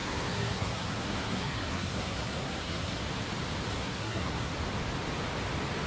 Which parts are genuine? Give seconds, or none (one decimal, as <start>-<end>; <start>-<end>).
3.0-3.7; 4.5-5.9